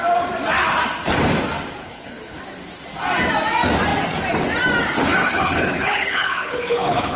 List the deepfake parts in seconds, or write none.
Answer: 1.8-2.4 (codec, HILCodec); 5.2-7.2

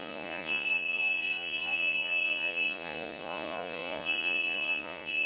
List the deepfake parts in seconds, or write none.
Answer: 0.0-5.3 (vocoder, Vocos)

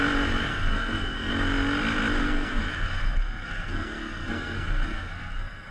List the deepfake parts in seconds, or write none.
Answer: 0.5-1.3 (codec, SNAC); 2.2-5.7